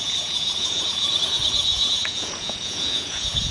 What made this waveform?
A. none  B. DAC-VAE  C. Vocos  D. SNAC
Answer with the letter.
C